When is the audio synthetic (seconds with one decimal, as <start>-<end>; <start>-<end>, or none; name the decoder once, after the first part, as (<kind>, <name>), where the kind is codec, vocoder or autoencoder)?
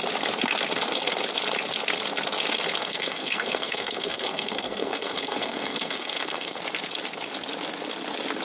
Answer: 2.8-6.6 (codec, SNAC)